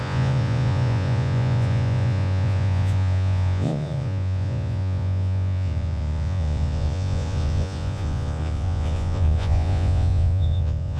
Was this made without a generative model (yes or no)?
no